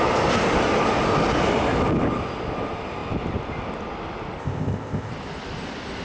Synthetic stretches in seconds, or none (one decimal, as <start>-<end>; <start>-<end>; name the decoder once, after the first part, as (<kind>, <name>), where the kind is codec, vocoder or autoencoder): 4.4-5.1 (codec, ZipCodec)